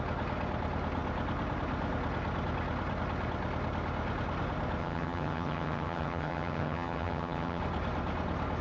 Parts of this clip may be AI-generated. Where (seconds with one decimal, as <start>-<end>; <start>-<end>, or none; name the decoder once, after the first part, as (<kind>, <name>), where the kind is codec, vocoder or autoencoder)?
4.8-7.6 (vocoder, HiFi-GAN)